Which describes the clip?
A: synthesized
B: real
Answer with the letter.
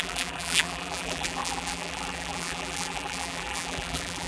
A